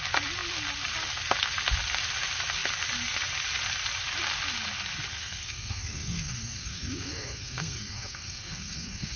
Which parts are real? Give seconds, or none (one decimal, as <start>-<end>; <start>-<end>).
0.0-5.1

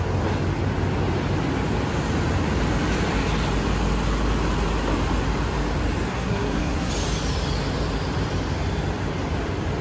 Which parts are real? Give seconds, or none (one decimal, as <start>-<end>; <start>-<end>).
0.0-6.1; 6.9-9.8

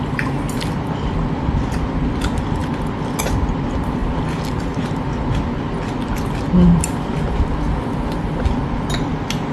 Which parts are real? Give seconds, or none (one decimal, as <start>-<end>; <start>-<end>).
0.0-9.5

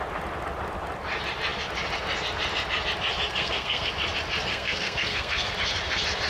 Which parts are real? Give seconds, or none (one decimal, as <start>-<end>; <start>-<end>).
0.0-3.3; 3.9-4.5; 5.5-6.3

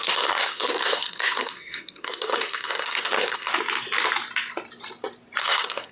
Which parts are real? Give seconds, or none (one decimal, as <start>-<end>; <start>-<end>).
3.5-5.4